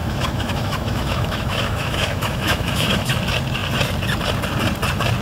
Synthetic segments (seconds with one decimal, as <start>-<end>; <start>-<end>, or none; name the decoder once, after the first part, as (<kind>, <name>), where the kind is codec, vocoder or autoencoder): 0.0-3.1 (autoencoder, DAC-VAE)